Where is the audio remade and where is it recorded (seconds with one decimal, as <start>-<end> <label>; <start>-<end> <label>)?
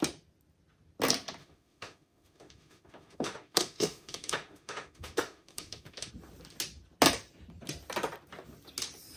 0.0-1.4 recorded; 1.4-6.1 remade; 6.1-9.2 recorded